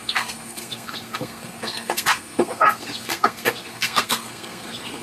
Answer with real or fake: fake